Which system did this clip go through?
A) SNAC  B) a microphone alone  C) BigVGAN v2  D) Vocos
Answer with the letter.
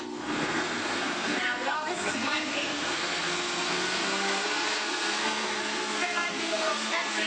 A